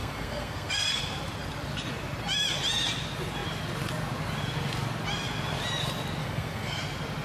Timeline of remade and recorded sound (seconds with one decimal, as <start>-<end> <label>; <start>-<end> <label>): 0.0-1.0 remade; 1.0-6.2 recorded; 6.2-6.8 remade; 6.8-7.2 recorded